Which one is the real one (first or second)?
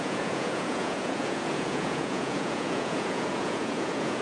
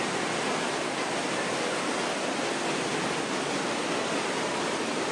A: second